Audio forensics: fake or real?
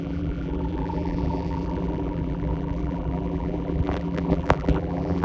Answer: fake